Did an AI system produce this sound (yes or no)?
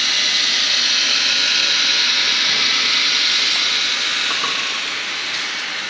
no